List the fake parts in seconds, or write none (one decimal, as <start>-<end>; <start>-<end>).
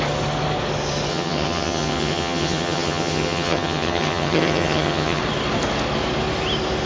1.1-5.2